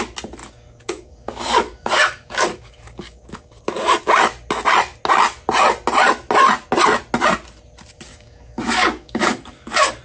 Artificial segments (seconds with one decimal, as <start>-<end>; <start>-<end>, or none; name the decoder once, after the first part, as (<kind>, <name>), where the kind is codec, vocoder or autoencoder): 0.4-3.6 (codec, DAC); 8.1-10.0